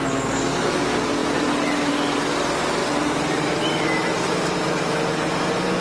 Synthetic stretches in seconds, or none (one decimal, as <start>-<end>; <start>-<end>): 2.8-4.8